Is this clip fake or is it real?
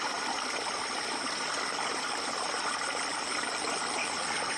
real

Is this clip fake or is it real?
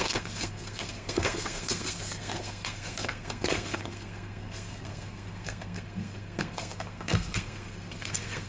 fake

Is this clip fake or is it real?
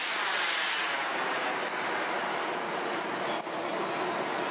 real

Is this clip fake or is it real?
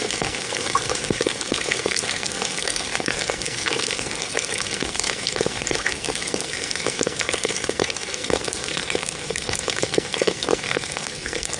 fake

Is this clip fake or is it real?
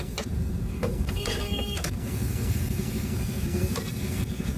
fake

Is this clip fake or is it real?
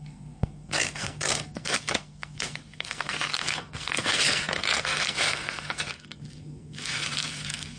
fake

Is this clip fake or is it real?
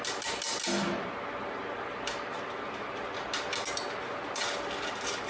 real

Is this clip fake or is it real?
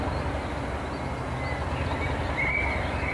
real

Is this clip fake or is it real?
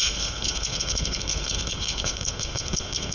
fake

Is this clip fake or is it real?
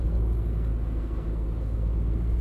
fake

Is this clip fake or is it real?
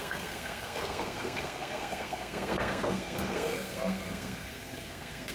fake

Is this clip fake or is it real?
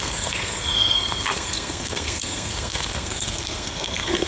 fake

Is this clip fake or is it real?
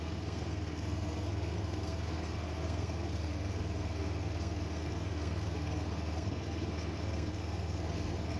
fake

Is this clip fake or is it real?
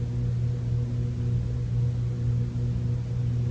real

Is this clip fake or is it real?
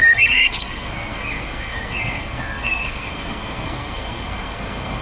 fake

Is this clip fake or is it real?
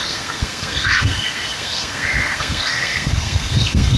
fake